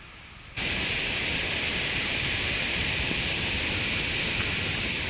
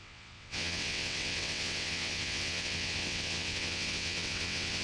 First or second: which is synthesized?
second